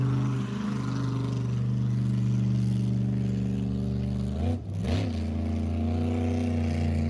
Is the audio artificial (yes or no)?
no